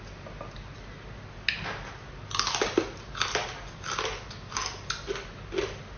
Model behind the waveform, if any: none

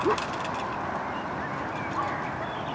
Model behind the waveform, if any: none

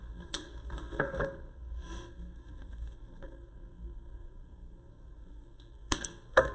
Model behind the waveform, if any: codec, SNAC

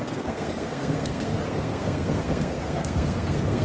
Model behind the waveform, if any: codec, SNAC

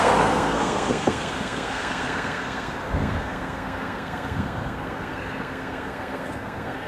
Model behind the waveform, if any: codec, SNAC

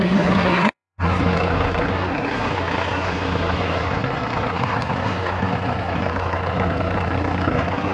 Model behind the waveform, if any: codec, SNAC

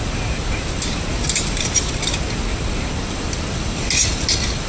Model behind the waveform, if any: none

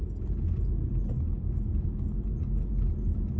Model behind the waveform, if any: none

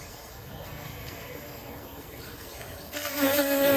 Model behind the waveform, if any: codec, SNAC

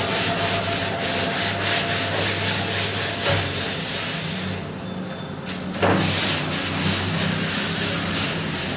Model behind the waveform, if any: none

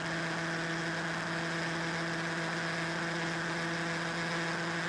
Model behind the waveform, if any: none